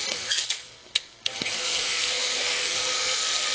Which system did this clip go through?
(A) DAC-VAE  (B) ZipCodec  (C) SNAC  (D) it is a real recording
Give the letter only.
C